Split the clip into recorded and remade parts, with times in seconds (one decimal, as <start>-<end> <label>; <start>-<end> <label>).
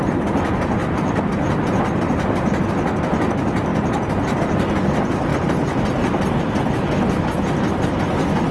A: 0.0-0.8 recorded; 0.8-2.6 remade; 2.6-3.7 recorded; 3.7-4.4 remade; 4.4-5.3 recorded; 5.3-6.4 remade; 6.4-8.5 recorded